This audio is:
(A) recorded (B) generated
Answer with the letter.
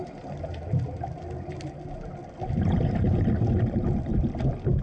A